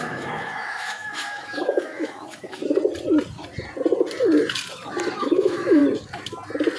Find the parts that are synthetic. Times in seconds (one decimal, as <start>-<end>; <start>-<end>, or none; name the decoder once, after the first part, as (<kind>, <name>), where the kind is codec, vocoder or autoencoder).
0.0-2.6 (autoencoder, DAC-VAE); 5.2-5.8